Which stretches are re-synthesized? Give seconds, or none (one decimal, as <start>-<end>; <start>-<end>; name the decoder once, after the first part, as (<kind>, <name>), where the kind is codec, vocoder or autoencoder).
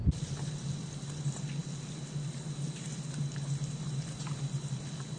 none